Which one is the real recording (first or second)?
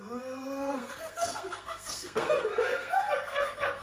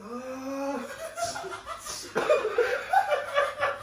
second